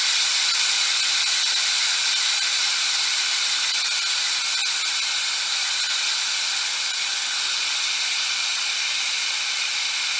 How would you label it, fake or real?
real